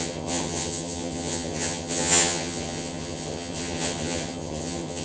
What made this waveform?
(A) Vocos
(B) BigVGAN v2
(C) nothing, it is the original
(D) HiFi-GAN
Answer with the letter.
D